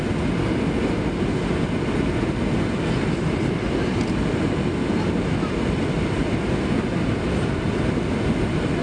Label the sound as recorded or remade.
recorded